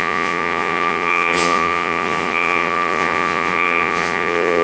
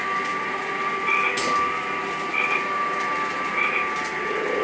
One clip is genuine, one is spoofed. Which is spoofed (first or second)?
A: first